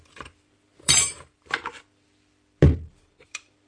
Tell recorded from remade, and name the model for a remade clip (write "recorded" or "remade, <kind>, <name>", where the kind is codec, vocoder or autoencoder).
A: remade, vocoder, BigVGAN v2